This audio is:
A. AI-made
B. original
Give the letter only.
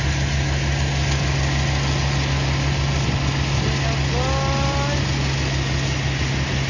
B